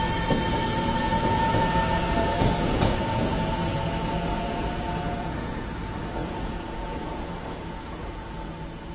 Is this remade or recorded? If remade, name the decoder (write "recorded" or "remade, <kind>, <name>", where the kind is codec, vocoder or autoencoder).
remade, vocoder, Vocos